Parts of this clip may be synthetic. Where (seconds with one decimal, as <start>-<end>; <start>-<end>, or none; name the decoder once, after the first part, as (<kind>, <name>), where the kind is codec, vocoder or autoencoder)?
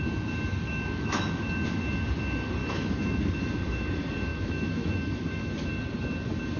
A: 0.5-1.4 (autoencoder, DAC-VAE); 2.6-3.2; 4.3-5.7